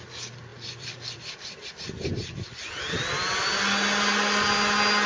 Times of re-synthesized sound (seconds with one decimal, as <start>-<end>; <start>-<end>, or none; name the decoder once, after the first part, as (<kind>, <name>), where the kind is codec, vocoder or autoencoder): 0.5-1.7 (vocoder, BigVGAN v2)